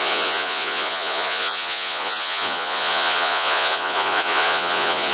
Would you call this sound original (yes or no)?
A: no